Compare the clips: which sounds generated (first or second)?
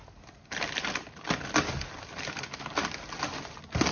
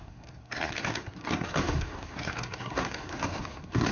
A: second